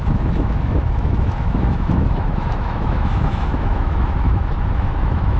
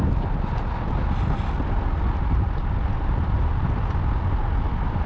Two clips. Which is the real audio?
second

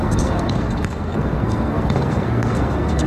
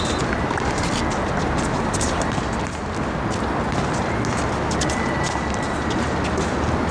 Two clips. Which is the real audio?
second